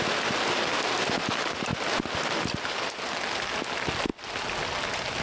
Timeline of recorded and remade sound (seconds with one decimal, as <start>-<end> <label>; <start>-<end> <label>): 0.0-5.2 recorded